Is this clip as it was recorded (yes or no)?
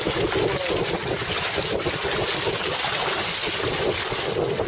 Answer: yes